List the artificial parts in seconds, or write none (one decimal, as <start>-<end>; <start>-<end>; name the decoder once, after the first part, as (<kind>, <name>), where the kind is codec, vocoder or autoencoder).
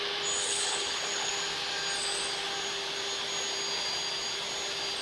0.4-1.3 (codec, HILCodec)